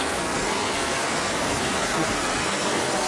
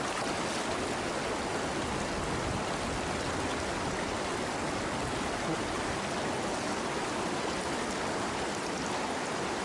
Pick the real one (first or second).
second